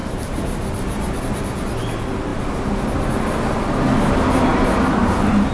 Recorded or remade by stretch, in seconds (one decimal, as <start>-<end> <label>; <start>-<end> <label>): 0.0-1.2 remade; 1.2-5.5 recorded